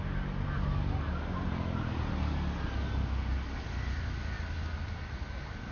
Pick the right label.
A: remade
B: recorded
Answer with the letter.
B